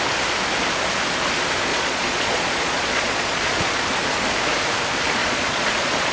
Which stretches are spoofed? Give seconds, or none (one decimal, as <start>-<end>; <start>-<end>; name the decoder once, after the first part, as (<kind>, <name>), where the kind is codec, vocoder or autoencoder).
1.7-3.7 (vocoder, Vocos); 5.2-6.1